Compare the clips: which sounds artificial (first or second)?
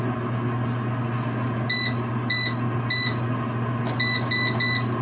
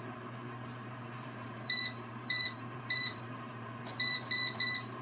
second